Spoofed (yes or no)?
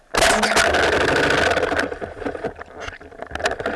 no